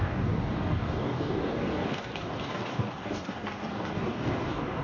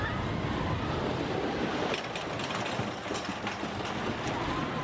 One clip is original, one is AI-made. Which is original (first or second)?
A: second